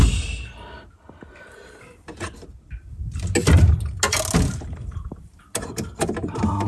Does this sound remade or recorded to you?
recorded